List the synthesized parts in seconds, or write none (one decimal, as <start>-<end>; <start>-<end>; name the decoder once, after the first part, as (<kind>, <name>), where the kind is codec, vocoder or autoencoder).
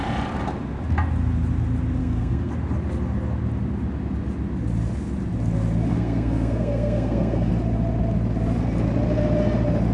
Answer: 2.0-2.5 (codec, SNAC); 5.9-7.5